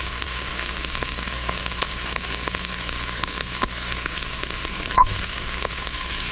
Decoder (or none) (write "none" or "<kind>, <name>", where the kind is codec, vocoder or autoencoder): codec, SNAC